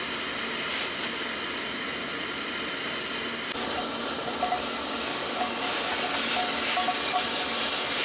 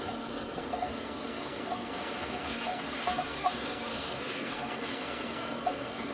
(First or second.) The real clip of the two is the first